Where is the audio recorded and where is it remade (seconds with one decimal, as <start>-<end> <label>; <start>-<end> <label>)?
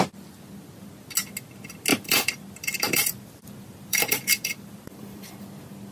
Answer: 0.0-1.9 recorded; 1.9-5.4 remade; 5.4-5.9 recorded